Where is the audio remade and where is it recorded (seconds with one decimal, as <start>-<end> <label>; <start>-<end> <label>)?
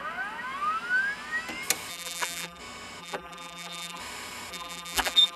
0.0-1.9 recorded; 1.9-2.6 remade; 2.6-3.0 recorded; 3.0-4.0 remade; 4.0-4.5 recorded; 4.5-5.4 remade